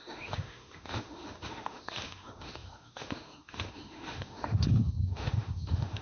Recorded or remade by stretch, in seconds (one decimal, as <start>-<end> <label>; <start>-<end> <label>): 0.0-6.0 remade